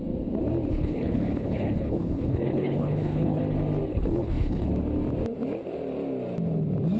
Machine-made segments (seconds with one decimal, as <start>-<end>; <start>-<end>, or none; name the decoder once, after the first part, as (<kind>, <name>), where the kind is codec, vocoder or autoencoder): 0.7-3.4 (codec, HILCodec); 3.9-4.7